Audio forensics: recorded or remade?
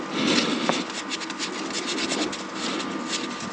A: recorded